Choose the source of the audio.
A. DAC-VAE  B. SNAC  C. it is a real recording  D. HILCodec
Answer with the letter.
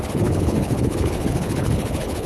D